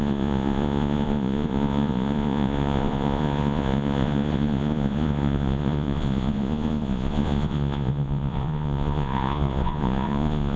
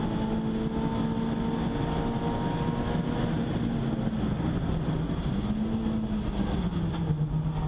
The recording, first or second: second